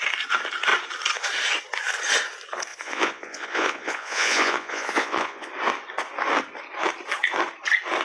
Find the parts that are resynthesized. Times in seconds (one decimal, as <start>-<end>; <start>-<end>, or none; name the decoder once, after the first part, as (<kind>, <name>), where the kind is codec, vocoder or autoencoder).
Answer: 2.7-5.5 (vocoder, Vocos)